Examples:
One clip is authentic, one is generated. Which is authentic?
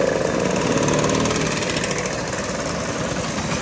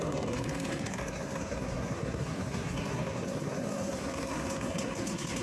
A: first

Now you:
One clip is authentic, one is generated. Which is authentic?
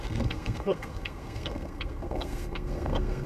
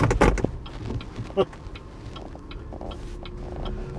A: second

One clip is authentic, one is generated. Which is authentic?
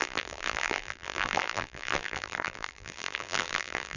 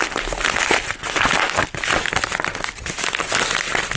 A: second